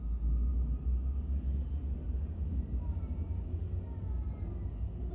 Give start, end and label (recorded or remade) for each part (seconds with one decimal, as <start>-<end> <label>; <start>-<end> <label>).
0.0-5.1 recorded